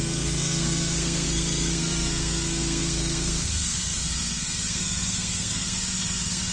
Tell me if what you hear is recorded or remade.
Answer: remade